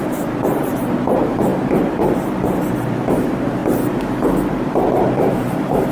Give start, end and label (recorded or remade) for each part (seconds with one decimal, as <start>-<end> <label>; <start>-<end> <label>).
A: 0.0-3.6 remade; 3.6-4.5 recorded; 4.5-5.9 remade